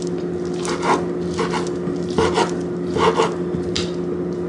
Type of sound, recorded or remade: recorded